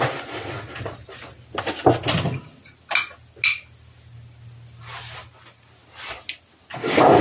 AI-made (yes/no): no